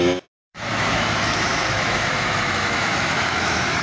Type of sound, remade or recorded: remade